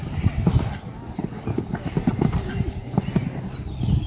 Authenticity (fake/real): real